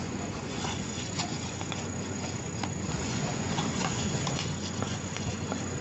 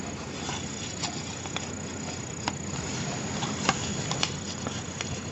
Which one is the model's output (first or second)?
first